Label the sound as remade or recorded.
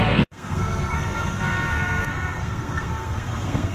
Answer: remade